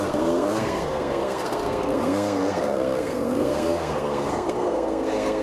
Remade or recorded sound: remade